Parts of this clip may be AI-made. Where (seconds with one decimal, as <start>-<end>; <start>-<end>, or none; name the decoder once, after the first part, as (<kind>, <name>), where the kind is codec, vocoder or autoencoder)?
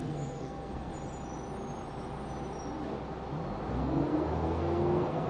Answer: 0.0-0.9 (codec, SNAC); 3.7-5.3